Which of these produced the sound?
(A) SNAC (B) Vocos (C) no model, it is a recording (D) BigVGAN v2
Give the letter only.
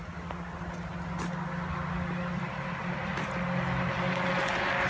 C